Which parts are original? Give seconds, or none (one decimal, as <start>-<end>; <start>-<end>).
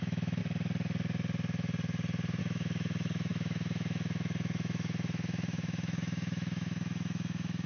0.4-2.4